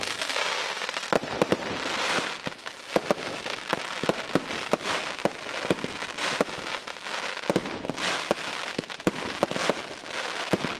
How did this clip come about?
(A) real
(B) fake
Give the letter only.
A